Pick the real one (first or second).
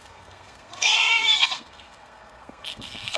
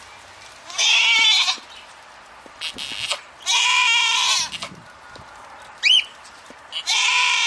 second